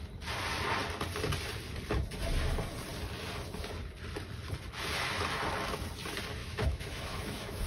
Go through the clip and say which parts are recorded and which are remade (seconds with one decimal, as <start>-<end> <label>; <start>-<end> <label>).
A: 0.0-6.4 recorded; 6.4-7.7 remade